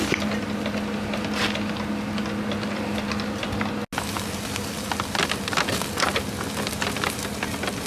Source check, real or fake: real